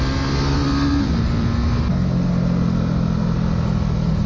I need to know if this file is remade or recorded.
recorded